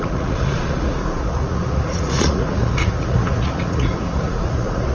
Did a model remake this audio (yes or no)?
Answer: yes